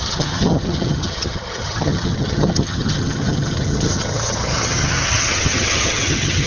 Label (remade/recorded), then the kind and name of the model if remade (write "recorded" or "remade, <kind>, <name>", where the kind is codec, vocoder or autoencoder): remade, vocoder, HiFi-GAN